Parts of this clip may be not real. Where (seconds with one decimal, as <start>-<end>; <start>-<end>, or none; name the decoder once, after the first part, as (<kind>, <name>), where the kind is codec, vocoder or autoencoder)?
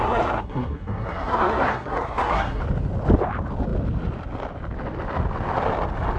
0.0-2.6 (codec, SNAC)